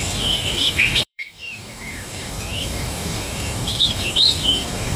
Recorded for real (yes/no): no